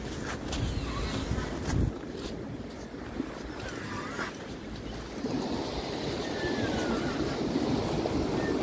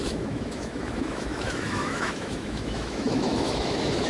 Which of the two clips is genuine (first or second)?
first